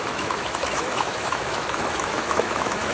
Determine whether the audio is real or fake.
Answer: fake